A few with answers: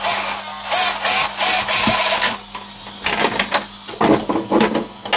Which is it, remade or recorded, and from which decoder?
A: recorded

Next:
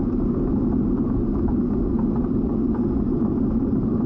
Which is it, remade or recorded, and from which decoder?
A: recorded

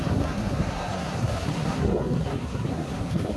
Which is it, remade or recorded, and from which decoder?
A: remade, codec, SNAC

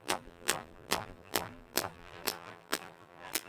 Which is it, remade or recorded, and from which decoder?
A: remade, vocoder, BigVGAN v2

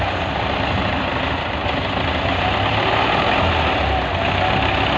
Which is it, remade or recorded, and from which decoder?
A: recorded